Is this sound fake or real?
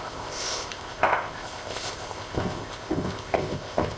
fake